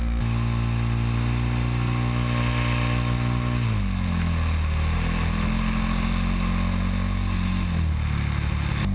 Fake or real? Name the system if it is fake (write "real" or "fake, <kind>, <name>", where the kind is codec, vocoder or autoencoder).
real